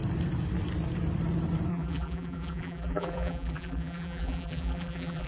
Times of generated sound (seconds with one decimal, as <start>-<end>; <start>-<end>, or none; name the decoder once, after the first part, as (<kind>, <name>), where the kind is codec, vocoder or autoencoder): 1.7-5.3 (vocoder, BigVGAN v2)